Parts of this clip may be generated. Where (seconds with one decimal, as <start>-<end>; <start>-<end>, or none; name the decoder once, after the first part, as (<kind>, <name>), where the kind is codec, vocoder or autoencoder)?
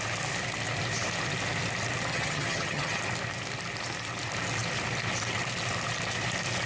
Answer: 2.1-3.0 (vocoder, HiFi-GAN)